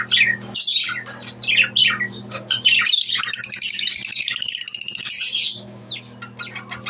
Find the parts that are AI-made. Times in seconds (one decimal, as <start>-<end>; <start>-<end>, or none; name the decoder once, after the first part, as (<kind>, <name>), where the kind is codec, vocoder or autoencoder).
1.8-5.9 (vocoder, BigVGAN v2)

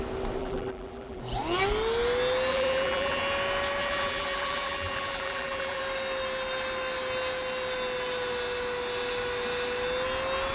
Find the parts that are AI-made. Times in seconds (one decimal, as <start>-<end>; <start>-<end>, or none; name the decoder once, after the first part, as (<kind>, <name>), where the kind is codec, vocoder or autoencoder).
0.4-1.2 (vocoder, BigVGAN v2); 2.5-3.2; 3.8-5.8

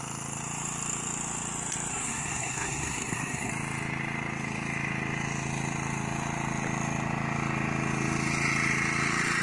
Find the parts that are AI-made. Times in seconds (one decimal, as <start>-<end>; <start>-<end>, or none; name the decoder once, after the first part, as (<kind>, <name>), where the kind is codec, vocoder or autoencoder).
1.9-3.5 (codec, SNAC)

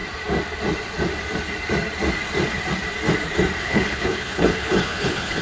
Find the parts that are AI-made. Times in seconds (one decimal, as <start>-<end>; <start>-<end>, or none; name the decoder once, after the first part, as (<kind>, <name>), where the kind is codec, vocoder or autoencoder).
3.6-5.4 (codec, HILCodec)

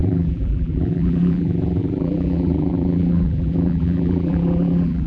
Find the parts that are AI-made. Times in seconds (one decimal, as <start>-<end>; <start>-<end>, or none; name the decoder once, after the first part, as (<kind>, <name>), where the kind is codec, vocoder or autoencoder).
0.0-5.1 (vocoder, BigVGAN v2)

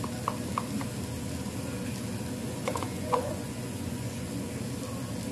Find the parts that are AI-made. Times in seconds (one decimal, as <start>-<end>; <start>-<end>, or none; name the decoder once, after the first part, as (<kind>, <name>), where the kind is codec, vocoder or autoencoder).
2.4-4.5 (vocoder, Vocos)

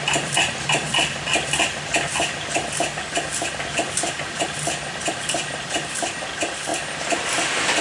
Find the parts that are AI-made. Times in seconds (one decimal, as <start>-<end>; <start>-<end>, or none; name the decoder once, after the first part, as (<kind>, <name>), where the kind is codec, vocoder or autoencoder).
none